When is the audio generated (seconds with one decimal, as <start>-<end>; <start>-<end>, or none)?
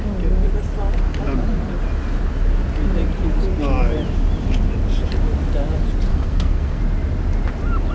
6.1-6.8